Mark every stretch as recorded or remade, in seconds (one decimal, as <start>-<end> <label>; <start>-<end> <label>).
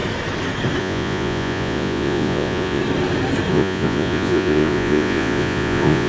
0.0-0.8 recorded; 0.8-2.8 remade; 2.8-3.5 recorded; 3.5-6.1 remade